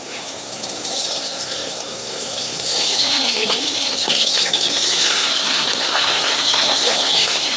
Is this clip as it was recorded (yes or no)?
no